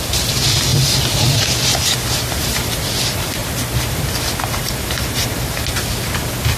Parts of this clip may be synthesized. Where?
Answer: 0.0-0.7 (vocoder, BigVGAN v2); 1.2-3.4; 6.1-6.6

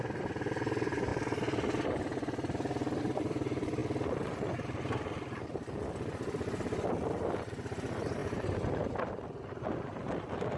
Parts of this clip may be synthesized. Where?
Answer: 0.0-1.1 (vocoder, BigVGAN v2); 3.0-3.8; 7.5-8.2; 9.5-10.6

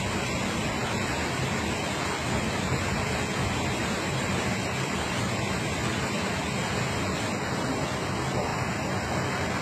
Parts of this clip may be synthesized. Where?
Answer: 3.8-6.4 (vocoder, BigVGAN v2); 8.5-9.0

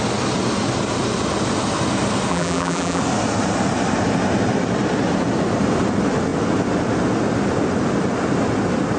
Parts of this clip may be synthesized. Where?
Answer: 2.3-3.0 (vocoder, BigVGAN v2)

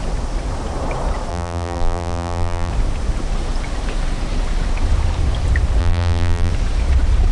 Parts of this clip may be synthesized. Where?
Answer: 1.3-2.7 (vocoder, BigVGAN v2); 5.8-6.5

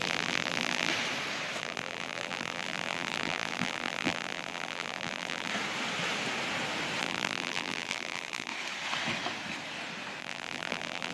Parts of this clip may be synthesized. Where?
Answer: 0.0-0.9 (vocoder, BigVGAN v2); 1.6-5.5; 7.0-8.5; 10.2-11.1

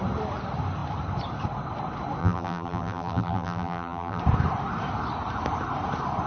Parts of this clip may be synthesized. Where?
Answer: 2.2-4.2 (vocoder, BigVGAN v2)